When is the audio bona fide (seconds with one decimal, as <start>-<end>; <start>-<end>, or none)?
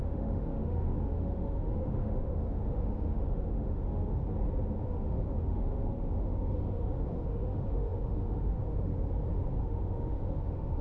4.2-4.8; 8.9-9.6